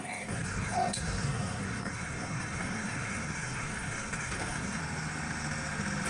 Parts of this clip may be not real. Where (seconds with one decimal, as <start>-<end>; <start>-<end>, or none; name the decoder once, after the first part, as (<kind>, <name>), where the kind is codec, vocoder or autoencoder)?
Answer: 0.0-4.8 (codec, SNAC)